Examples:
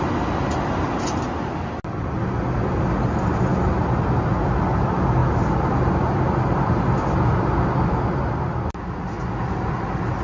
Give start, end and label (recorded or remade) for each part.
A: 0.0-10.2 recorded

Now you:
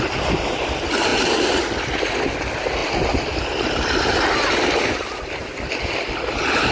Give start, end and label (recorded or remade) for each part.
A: 0.0-6.7 recorded

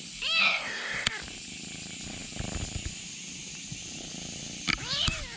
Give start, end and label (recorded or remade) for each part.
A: 0.0-0.4 recorded; 0.4-1.1 remade; 1.1-5.4 recorded